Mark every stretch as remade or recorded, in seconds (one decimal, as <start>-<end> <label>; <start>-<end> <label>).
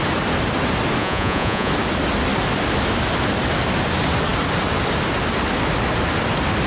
0.0-1.0 recorded; 1.0-1.7 remade; 1.7-6.7 recorded